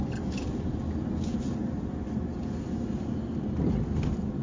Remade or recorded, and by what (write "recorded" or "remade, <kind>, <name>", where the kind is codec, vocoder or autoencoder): recorded